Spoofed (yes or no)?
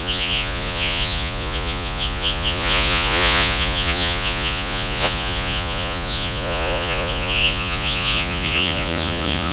yes